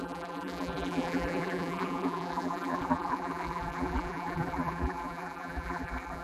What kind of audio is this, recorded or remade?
remade